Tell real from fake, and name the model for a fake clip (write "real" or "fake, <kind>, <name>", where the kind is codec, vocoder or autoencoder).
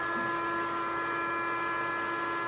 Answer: real